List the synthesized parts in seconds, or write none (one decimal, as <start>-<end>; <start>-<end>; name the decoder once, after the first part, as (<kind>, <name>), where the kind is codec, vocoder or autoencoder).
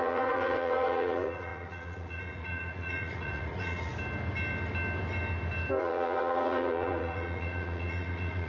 0.0-3.9 (vocoder, Vocos); 5.8-8.5